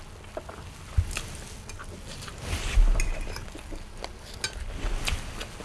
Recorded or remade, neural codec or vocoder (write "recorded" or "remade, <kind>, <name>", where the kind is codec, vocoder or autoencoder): recorded